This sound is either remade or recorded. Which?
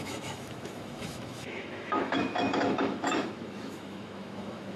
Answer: remade